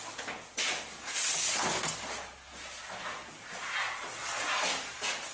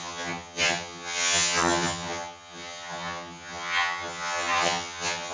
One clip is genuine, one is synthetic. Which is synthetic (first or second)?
second